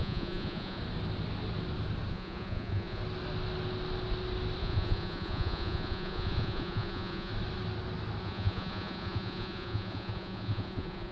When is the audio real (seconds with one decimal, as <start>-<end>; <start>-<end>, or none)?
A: 0.8-2.1; 3.0-4.6; 7.3-8.2